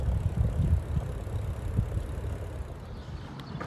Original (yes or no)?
yes